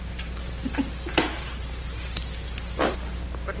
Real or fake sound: fake